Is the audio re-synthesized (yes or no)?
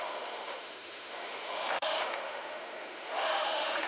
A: yes